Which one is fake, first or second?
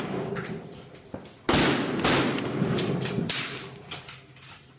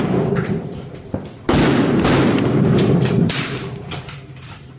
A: second